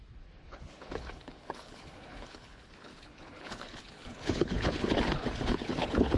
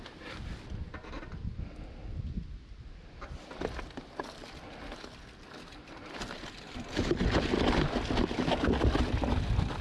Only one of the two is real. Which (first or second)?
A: second